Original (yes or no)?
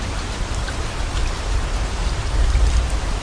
yes